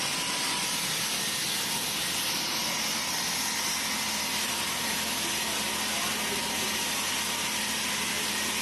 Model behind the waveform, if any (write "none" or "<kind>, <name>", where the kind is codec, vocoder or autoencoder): none